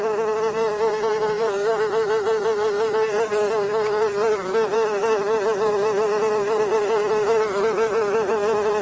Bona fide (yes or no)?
no